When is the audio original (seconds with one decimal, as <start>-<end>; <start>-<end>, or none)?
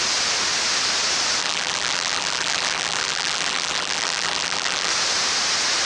0.0-1.4; 4.9-5.9